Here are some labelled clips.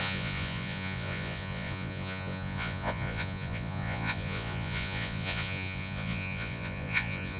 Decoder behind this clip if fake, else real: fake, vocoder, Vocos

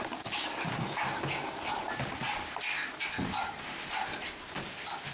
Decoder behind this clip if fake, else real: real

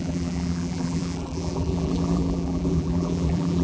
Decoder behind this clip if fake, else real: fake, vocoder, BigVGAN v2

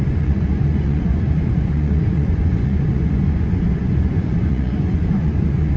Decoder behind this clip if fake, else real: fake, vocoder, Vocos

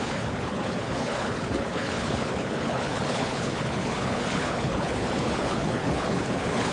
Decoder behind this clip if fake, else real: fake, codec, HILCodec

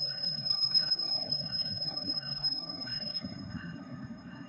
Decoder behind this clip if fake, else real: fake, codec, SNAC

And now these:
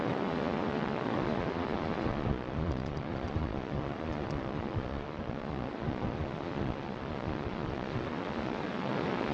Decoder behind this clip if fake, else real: fake, vocoder, Vocos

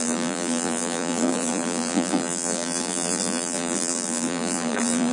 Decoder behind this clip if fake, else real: fake, vocoder, BigVGAN v2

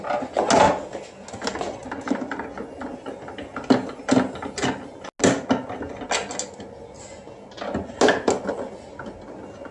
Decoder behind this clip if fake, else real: real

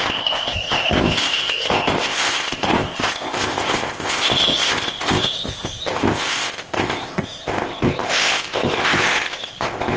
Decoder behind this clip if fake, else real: fake, codec, ZipCodec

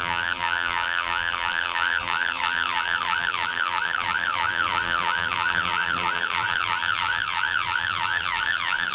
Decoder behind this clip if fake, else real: fake, vocoder, BigVGAN v2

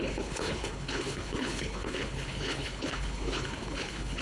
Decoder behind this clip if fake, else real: fake, codec, HILCodec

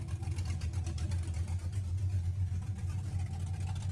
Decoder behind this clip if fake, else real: real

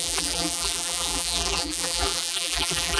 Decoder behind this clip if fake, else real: fake, vocoder, BigVGAN v2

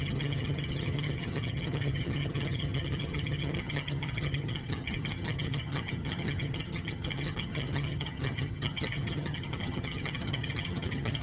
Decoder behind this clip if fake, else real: fake, vocoder, HiFi-GAN